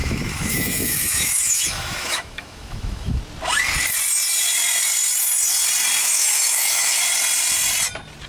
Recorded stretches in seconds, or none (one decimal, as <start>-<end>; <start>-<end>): 3.2-6.0; 7.0-8.3